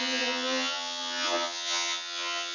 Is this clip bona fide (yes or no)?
no